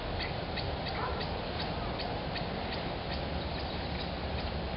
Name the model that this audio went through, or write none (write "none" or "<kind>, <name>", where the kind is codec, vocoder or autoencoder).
none